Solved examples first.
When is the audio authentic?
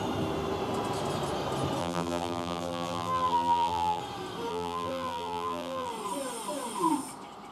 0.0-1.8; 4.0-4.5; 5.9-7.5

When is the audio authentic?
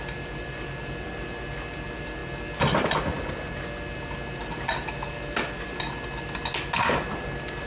0.0-7.7